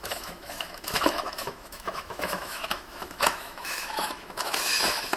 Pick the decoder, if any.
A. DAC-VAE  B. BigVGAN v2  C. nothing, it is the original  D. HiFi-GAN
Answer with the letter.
A